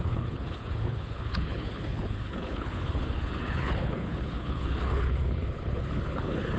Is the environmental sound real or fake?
fake